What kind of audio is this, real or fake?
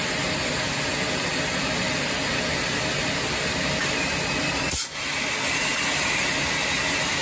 real